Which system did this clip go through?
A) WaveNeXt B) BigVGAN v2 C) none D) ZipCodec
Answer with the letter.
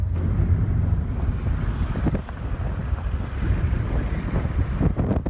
C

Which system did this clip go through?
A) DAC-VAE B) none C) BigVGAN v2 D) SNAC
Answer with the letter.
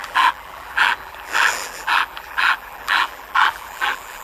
C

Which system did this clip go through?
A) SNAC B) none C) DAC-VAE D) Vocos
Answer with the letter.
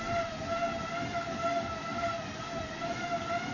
B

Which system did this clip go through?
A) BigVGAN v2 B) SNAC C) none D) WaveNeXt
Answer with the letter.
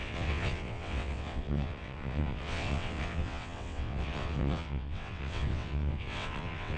D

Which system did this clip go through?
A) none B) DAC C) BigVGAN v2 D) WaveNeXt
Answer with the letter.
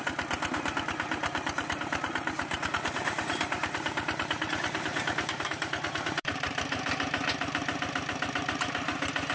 C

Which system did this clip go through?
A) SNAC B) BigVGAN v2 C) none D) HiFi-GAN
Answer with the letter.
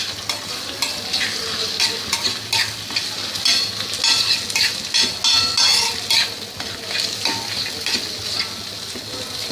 C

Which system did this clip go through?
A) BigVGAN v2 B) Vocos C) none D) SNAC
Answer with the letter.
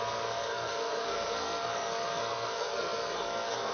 D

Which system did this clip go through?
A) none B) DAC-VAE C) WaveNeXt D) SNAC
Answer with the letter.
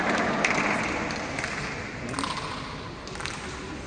A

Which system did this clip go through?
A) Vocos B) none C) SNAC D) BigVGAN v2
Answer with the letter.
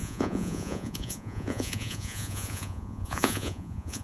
A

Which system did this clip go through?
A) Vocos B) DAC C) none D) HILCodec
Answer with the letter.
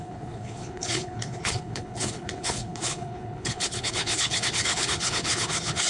D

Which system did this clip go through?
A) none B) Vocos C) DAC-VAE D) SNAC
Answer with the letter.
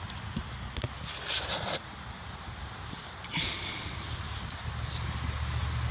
A